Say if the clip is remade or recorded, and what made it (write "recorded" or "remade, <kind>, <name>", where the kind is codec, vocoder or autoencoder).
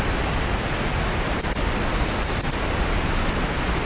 recorded